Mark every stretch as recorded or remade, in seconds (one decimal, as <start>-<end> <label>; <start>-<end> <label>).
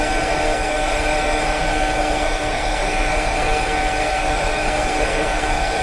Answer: 0.0-5.8 remade